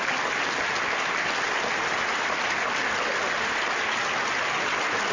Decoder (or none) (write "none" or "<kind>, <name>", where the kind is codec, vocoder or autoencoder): none